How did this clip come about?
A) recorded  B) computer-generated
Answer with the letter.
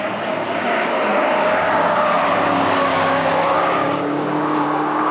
B